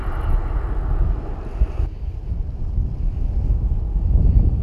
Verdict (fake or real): real